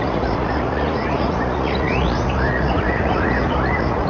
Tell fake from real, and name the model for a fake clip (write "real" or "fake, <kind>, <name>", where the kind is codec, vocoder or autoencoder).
fake, vocoder, Vocos